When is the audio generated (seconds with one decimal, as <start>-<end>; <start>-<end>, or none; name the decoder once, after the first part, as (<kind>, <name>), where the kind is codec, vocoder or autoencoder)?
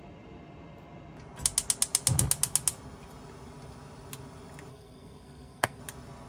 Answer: 4.7-5.8 (codec, SNAC)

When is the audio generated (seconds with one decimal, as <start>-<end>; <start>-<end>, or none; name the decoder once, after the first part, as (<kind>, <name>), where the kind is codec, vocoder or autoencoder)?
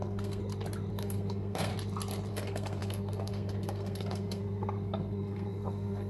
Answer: 0.0-0.4 (codec, SNAC); 0.9-1.7; 2.3-6.1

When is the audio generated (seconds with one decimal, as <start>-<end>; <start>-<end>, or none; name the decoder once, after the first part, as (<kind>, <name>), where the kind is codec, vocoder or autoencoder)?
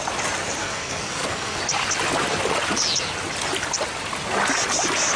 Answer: 0.6-1.6 (codec, SNAC)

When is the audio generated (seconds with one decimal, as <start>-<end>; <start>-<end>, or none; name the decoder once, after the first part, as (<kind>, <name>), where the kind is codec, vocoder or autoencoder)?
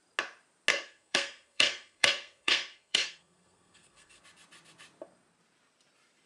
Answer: 0.7-4.2 (codec, SNAC)